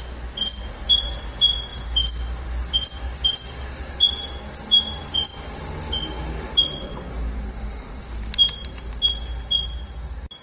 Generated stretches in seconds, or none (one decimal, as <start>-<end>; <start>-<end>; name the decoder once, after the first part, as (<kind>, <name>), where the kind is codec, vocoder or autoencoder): none